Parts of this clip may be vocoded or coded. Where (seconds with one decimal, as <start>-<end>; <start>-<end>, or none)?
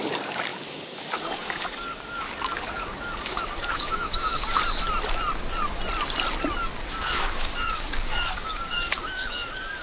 0.0-4.6; 6.9-9.8